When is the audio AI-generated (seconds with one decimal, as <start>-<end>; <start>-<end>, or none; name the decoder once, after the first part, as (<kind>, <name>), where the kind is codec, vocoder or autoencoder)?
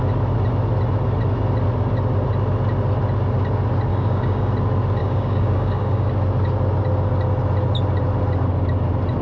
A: 3.9-4.5 (codec, DAC); 5.0-6.1